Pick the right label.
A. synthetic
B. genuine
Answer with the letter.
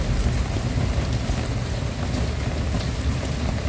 B